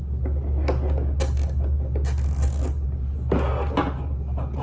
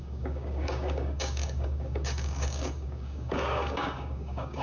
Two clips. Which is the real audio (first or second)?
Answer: first